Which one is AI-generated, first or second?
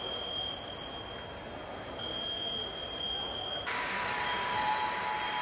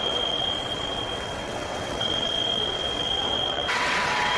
second